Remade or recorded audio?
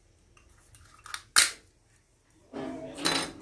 recorded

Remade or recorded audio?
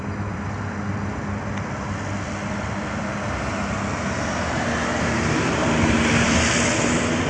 recorded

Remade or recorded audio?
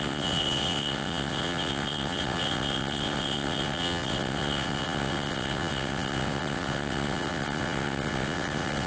remade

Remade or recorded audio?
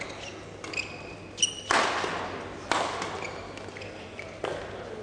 recorded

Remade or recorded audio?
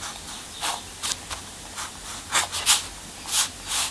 recorded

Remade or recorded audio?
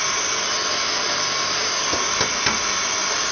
recorded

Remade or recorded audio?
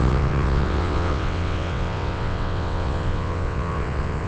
remade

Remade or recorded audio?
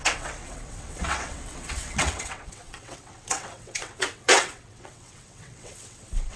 remade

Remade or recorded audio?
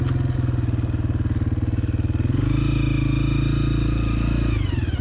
recorded